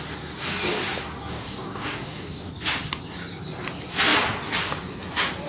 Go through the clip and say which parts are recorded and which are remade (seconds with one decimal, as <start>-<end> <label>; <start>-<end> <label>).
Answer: 0.0-1.3 recorded; 1.3-2.5 remade; 2.5-5.5 recorded